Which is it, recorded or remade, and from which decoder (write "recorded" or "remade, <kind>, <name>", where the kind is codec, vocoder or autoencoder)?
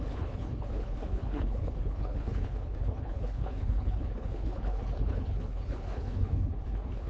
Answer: remade, codec, HILCodec